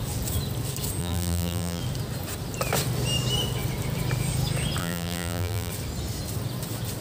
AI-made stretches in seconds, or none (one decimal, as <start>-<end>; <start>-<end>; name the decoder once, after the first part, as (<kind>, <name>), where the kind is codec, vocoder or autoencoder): 1.0-1.8 (vocoder, BigVGAN v2); 4.8-5.7